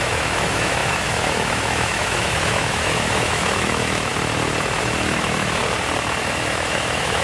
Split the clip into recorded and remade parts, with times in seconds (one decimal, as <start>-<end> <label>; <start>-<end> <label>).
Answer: 0.0-4.1 remade; 4.1-4.8 recorded; 4.8-5.6 remade; 5.6-6.2 recorded; 6.2-7.2 remade